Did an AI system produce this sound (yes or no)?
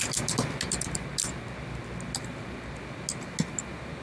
no